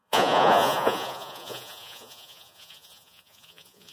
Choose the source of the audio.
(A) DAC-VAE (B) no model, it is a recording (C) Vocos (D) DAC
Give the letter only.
C